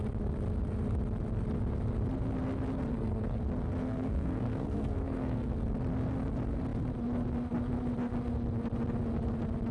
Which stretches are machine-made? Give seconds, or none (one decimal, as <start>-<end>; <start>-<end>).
2.9-3.4; 3.8-5.5